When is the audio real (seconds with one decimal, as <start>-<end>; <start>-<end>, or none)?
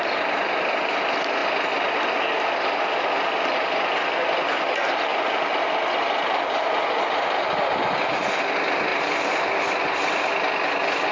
0.0-11.1